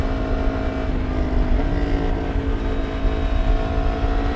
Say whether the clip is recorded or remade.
recorded